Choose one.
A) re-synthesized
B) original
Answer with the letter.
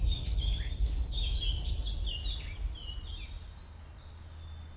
B